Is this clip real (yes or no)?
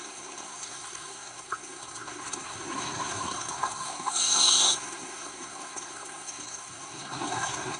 no